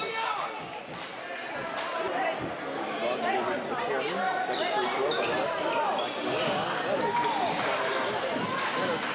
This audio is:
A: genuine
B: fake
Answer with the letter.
A